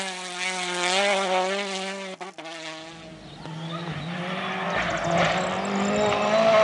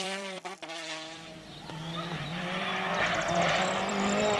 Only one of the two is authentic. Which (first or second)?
first